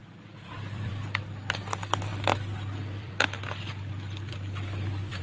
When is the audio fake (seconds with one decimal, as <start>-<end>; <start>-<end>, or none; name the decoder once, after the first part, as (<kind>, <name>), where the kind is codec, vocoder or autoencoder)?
0.0-0.9 (vocoder, BigVGAN v2); 2.1-5.2